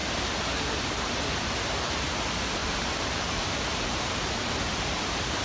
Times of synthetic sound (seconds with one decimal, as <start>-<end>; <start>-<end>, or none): 0.0-1.8; 2.6-4.0